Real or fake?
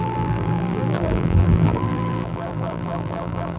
fake